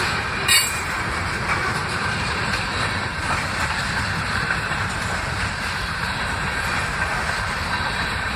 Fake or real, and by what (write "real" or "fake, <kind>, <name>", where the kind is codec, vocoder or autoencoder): fake, vocoder, BigVGAN v2